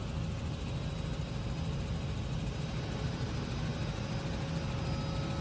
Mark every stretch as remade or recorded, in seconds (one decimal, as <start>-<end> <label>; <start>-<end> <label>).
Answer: 0.0-5.4 recorded